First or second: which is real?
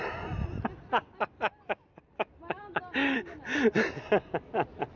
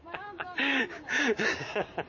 first